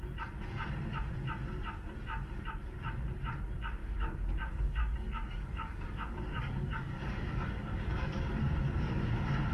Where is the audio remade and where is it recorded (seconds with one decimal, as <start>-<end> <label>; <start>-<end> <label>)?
0.0-3.8 recorded; 3.8-8.4 remade; 8.4-9.5 recorded